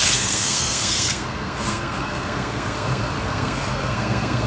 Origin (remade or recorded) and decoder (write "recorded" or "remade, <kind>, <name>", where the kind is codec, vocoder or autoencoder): remade, codec, SNAC